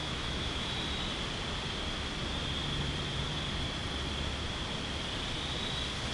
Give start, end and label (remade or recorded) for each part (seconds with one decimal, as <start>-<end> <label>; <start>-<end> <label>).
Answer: 0.0-0.7 remade; 0.7-6.1 recorded